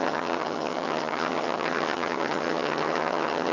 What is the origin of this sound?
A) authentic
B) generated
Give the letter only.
B